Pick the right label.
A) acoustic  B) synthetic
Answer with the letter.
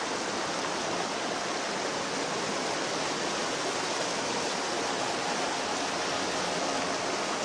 A